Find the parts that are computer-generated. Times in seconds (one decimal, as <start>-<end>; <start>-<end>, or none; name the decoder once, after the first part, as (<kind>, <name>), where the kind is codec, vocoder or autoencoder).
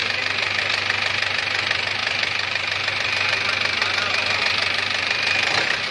0.6-2.0 (vocoder, BigVGAN v2); 2.9-5.9